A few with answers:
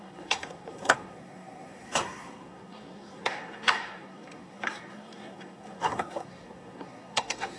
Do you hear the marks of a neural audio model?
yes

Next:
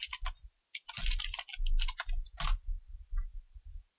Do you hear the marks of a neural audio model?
no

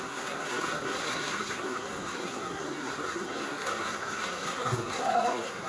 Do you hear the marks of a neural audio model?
yes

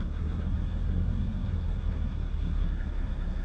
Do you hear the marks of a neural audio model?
yes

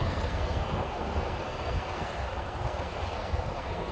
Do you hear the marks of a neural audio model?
yes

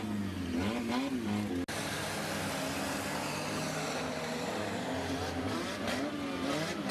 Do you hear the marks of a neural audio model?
no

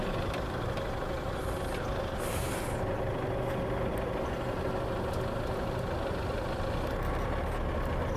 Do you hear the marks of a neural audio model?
no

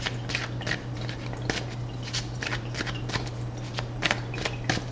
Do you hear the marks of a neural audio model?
no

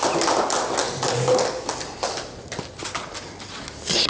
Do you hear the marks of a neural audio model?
no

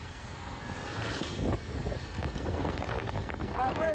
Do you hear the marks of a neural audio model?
yes